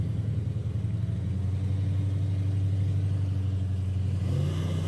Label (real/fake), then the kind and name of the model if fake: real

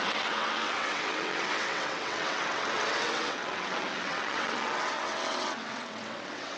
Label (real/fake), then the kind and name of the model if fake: fake, vocoder, WaveNeXt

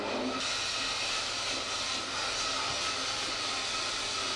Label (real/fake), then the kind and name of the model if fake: real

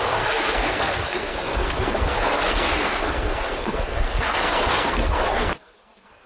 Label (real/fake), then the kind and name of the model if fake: fake, codec, SNAC